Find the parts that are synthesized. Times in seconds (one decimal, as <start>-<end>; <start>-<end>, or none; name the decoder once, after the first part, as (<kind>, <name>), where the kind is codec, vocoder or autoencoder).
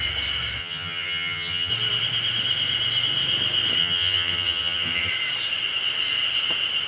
0.6-1.7 (vocoder, HiFi-GAN); 3.8-5.1